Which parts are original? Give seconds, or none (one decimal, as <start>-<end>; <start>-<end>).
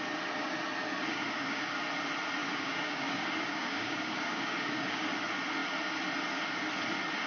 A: 0.0-1.1; 1.8-2.4; 5.1-7.3